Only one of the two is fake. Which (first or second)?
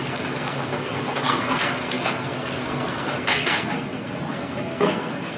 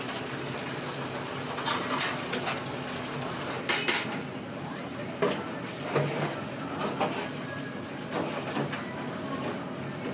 first